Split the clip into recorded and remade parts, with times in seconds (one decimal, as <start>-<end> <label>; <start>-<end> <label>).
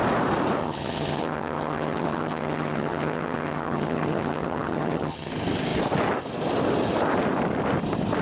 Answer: 0.0-0.6 recorded; 0.6-5.3 remade; 5.3-8.2 recorded